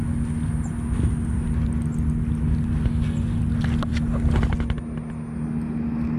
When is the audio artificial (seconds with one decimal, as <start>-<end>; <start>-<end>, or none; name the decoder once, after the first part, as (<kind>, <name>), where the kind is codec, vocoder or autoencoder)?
none